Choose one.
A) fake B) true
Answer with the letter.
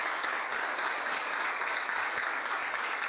A